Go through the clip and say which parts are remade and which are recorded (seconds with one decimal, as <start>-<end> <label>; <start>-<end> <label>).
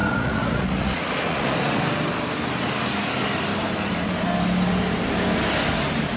0.0-1.8 remade; 1.8-6.2 recorded